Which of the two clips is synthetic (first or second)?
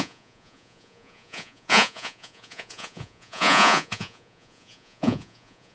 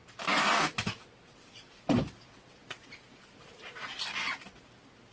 first